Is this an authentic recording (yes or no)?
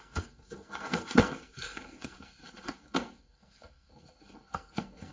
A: no